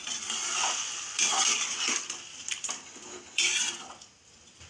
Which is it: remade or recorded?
remade